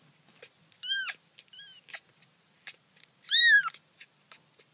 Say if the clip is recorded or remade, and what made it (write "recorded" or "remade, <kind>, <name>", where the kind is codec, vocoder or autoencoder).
recorded